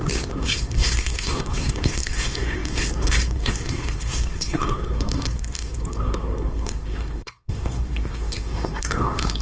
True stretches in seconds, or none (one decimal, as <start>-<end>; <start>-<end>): none